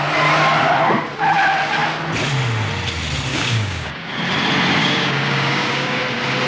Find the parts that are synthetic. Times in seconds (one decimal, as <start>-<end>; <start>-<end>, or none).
3.3-4.1; 4.8-6.0